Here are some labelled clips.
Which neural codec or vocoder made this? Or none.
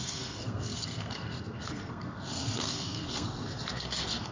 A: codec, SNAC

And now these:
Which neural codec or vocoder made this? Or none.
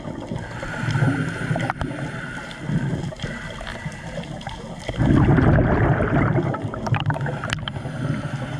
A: none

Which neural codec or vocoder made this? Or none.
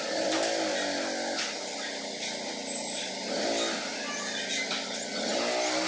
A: none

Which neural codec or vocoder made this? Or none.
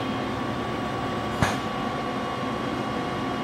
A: vocoder, BigVGAN v2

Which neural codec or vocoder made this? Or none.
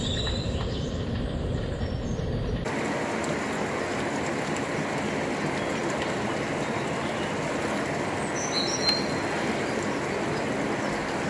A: none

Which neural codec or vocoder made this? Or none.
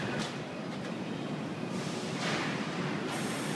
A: vocoder, BigVGAN v2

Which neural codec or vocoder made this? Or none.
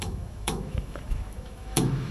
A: autoencoder, DAC-VAE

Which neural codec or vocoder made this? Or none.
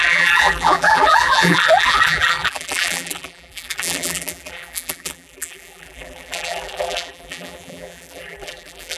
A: vocoder, BigVGAN v2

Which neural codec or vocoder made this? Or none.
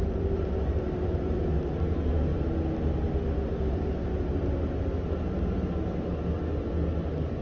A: none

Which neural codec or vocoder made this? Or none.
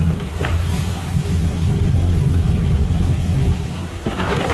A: codec, SNAC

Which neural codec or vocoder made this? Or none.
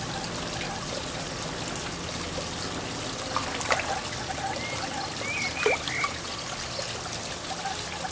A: none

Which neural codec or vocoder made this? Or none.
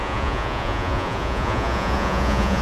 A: vocoder, Vocos